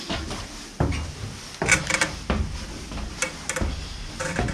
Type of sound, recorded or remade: recorded